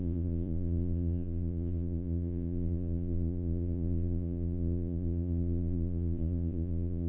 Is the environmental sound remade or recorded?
remade